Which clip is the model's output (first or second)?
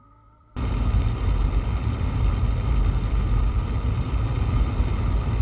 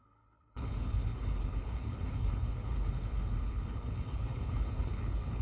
second